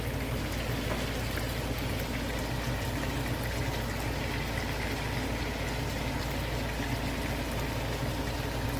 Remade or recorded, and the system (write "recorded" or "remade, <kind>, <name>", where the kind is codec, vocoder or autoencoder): recorded